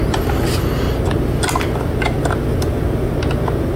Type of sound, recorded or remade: recorded